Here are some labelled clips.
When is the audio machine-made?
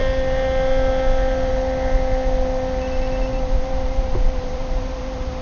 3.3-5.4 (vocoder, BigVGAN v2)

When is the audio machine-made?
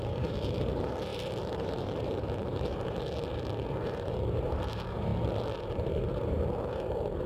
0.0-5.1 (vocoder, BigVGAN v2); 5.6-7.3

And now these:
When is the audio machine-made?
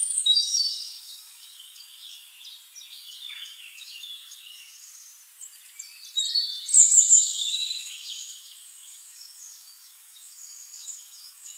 0.0-2.3 (codec, DAC); 2.9-5.1; 7.1-11.6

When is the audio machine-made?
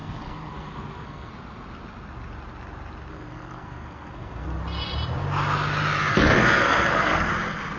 0.0-1.3 (codec, SNAC); 3.1-4.6; 6.1-7.3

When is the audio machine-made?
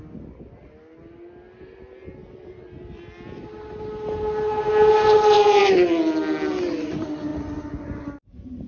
none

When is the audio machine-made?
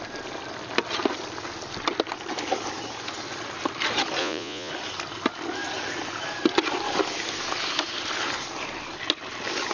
4.2-4.7 (vocoder, Vocos)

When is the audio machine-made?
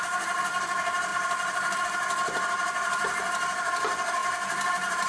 1.1-1.8 (vocoder, BigVGAN v2); 4.2-5.1